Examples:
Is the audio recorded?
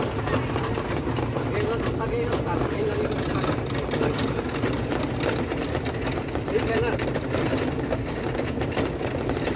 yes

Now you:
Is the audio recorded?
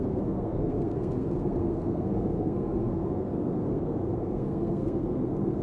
no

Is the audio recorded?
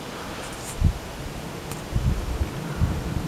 yes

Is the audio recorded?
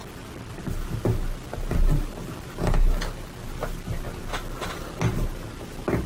yes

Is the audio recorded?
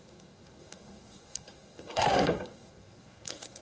no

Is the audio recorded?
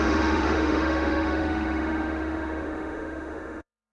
no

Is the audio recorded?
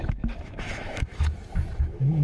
no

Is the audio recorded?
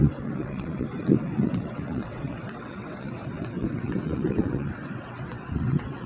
no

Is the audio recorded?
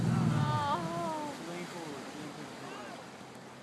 yes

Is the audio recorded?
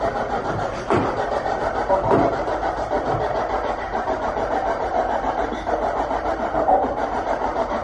no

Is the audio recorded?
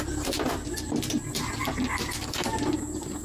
yes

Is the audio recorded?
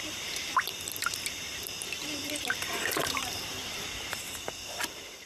no